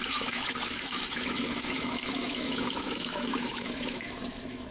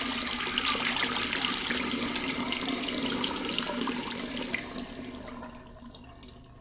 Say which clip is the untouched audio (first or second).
second